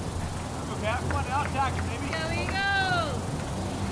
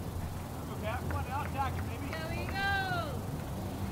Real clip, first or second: first